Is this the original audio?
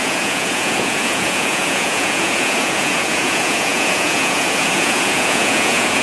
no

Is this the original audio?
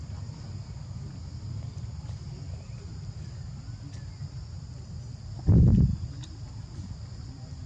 yes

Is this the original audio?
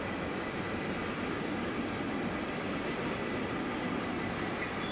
yes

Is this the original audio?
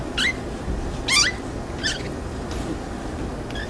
yes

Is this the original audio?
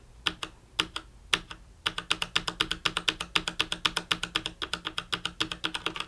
yes